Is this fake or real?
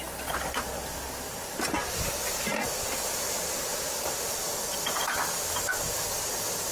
real